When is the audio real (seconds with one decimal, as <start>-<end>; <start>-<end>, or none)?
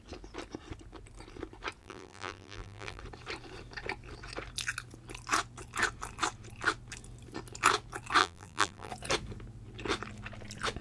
0.0-1.8; 3.0-8.2; 8.9-10.8